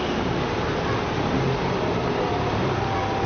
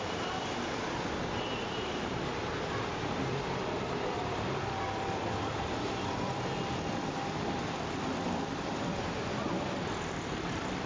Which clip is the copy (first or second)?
second